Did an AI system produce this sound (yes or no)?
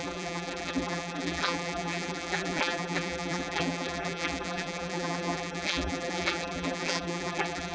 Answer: yes